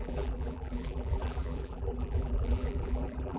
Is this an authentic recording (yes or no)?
no